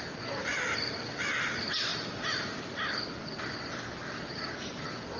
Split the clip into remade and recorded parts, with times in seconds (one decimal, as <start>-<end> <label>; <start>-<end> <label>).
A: 0.0-5.2 recorded